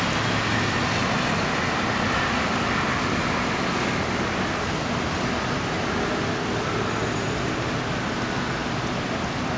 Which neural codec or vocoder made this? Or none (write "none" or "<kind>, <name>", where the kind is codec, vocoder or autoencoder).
none